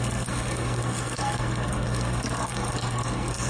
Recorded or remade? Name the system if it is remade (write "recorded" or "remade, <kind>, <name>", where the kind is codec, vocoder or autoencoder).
remade, codec, SNAC